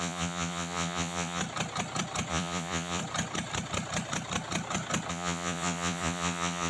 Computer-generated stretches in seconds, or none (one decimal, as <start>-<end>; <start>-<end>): 0.0-1.4; 2.3-3.0; 5.1-6.7